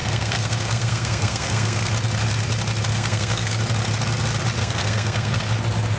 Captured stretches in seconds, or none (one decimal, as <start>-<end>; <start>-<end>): 1.9-2.9; 3.6-4.6; 5.4-6.0